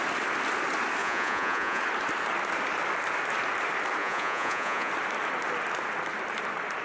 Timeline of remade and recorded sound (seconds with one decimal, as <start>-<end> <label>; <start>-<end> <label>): 0.0-1.0 recorded; 1.0-1.8 remade; 1.8-4.0 recorded; 4.0-4.9 remade; 4.9-6.8 recorded